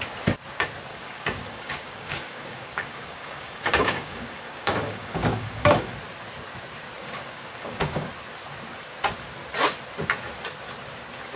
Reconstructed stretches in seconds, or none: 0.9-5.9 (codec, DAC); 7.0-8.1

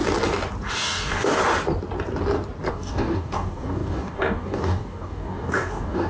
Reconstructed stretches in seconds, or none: 0.7-1.4 (codec, DAC); 2.7-6.1

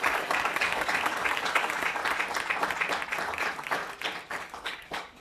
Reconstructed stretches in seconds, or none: 0.0-2.0 (codec, DAC); 3.3-3.8; 4.3-5.2

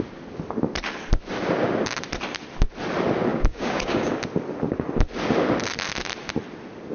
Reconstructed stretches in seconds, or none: 3.3-4.1 (codec, DAC)

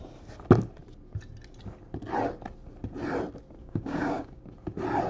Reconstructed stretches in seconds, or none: 3.6-4.4 (codec, DAC)